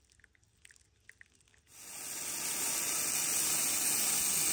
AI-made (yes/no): no